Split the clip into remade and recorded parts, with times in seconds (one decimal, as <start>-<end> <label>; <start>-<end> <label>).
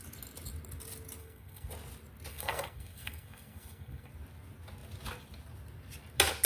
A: 0.0-1.2 recorded; 1.2-1.7 remade; 1.7-2.3 recorded; 2.3-4.1 remade; 4.1-6.5 recorded